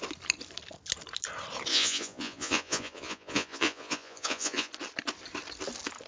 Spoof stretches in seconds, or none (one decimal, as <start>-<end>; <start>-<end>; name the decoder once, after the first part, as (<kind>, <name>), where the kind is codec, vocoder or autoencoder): 1.7-4.7 (vocoder, Vocos)